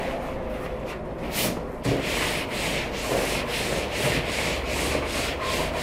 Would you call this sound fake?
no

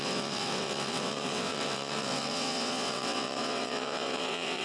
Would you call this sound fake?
yes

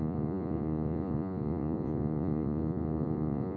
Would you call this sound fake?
yes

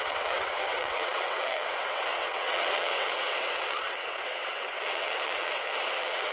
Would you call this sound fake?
yes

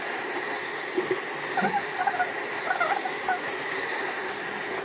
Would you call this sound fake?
no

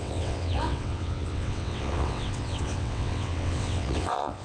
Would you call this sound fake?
yes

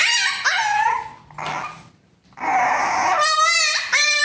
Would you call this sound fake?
no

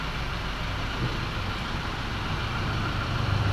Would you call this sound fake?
no